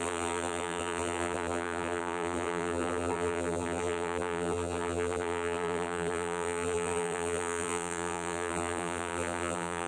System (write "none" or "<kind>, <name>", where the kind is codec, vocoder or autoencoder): vocoder, BigVGAN v2